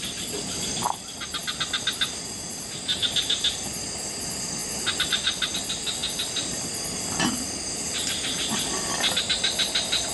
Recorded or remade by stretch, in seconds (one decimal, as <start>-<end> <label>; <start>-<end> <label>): 0.0-10.1 recorded